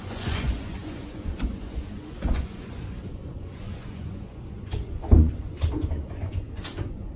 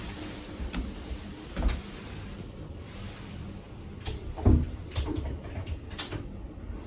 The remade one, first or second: first